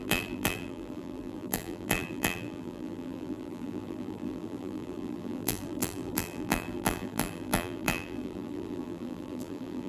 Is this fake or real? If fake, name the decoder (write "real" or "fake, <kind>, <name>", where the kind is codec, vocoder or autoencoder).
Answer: fake, vocoder, BigVGAN v2